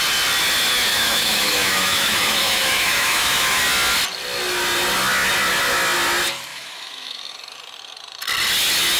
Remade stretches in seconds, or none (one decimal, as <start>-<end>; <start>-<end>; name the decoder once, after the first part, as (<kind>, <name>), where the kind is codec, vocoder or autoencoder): 0.9-3.6 (autoencoder, DAC-VAE); 6.5-7.2